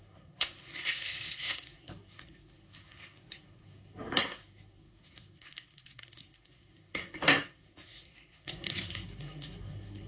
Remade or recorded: remade